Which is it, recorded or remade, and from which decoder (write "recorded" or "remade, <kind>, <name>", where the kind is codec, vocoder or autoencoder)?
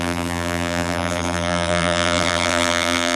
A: remade, vocoder, BigVGAN v2